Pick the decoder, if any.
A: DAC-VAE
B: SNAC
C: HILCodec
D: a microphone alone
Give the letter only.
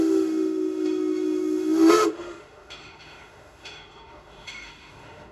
A